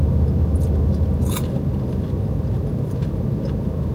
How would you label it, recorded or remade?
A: recorded